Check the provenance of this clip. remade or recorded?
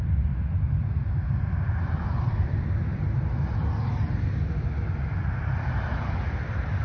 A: recorded